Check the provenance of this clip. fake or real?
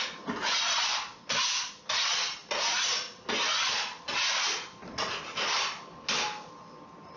real